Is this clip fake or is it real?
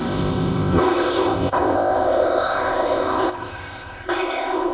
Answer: fake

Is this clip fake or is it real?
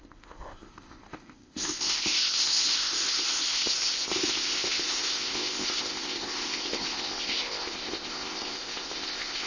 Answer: fake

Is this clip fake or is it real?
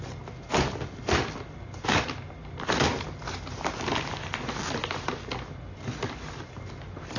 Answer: real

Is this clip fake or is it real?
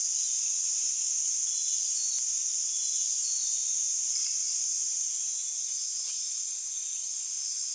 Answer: real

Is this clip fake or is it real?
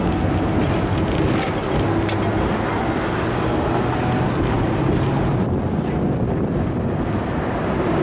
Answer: real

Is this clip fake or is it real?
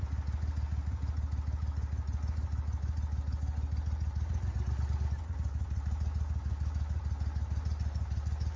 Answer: real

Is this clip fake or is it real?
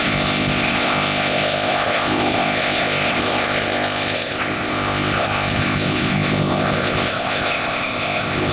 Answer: fake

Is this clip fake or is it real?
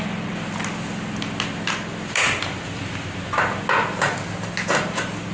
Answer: real